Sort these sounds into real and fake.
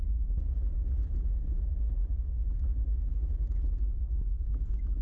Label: real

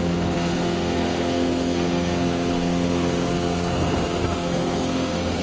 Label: fake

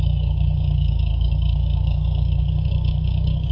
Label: fake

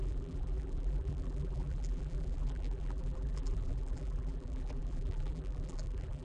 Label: fake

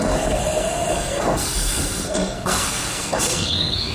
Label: fake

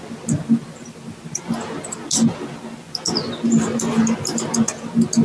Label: real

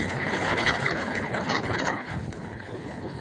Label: fake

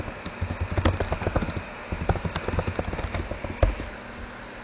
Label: real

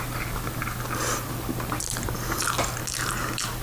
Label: real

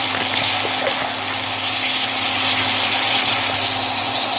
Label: real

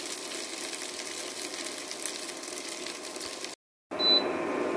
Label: real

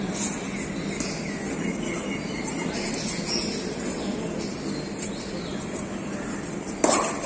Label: real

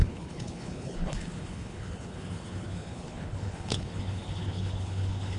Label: fake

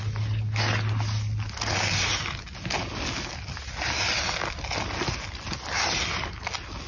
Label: real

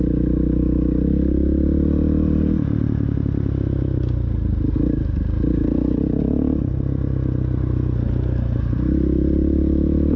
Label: real